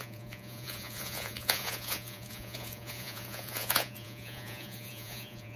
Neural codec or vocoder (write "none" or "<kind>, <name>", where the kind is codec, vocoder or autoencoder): vocoder, Vocos